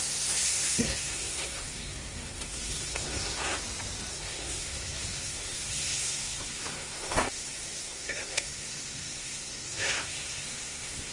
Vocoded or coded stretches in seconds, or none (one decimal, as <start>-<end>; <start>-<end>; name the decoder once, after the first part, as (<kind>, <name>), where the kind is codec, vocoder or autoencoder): 0.0-3.6 (codec, SNAC); 4.1-11.1